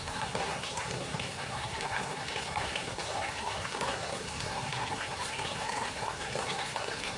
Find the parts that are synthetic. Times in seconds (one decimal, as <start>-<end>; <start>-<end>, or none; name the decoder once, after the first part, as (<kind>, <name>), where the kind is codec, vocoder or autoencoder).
0.0-7.2 (codec, SNAC)